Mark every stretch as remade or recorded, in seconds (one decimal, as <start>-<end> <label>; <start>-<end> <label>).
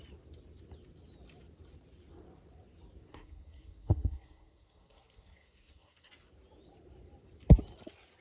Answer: 0.0-3.1 recorded; 3.1-6.1 remade; 6.1-8.2 recorded